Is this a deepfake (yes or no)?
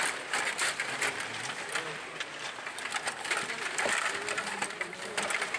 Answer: yes